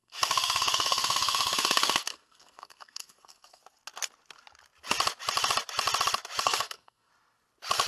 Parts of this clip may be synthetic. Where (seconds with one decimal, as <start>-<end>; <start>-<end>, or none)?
0.0-3.6; 6.4-7.1